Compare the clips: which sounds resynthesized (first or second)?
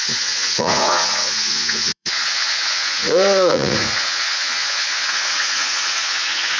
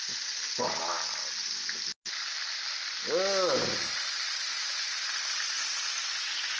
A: first